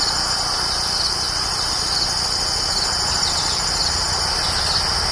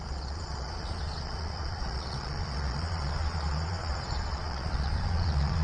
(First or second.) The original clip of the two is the first